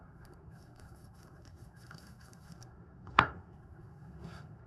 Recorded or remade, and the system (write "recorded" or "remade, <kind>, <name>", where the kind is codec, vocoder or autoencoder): remade, codec, SNAC